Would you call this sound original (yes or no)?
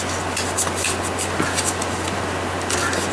yes